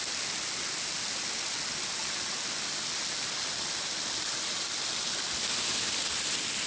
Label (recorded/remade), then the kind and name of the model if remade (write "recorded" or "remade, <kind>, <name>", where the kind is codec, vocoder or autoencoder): recorded